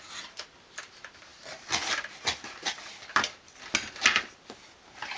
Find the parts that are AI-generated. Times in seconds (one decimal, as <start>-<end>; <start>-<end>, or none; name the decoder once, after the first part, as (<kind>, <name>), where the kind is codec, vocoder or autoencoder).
1.3-3.5 (vocoder, BigVGAN v2)